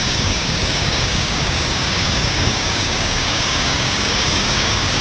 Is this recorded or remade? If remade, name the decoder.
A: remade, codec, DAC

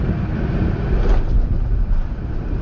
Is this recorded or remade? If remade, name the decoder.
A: recorded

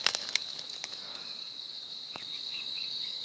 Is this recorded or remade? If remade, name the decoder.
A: remade, codec, DAC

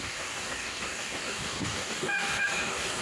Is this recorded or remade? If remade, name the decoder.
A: remade, codec, DAC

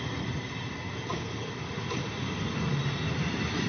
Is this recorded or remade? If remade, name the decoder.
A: recorded